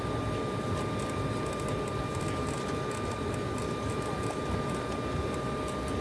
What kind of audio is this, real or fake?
real